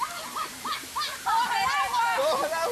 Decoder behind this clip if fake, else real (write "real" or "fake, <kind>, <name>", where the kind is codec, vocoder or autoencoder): real